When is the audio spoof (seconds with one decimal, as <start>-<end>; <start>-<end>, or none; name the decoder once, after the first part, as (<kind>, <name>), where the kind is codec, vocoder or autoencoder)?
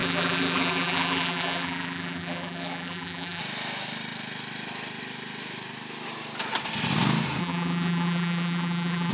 0.0-3.4 (vocoder, BigVGAN v2); 7.4-9.1